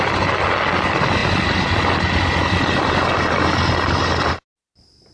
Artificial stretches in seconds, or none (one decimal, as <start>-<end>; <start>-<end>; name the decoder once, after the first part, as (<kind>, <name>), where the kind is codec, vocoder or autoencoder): none